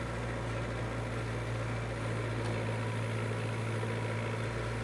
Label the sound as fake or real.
real